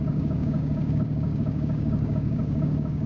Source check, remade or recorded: remade